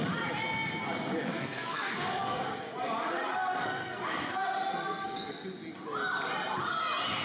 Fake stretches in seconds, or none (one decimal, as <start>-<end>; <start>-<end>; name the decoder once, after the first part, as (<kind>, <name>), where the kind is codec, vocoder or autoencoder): 1.3-2.4 (codec, SNAC); 3.4-4.0; 4.7-5.3